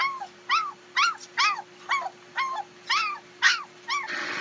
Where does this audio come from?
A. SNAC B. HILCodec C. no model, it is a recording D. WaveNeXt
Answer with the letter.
C